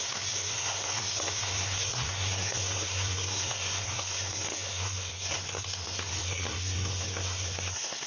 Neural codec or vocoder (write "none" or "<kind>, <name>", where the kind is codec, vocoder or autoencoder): codec, SNAC